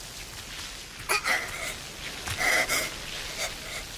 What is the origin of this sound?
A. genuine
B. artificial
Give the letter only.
A